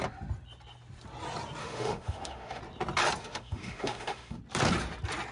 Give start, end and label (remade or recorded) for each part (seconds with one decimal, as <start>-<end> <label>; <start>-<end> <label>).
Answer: 0.0-1.6 recorded; 1.6-2.6 remade; 2.6-3.2 recorded; 3.2-4.4 remade; 4.4-5.3 recorded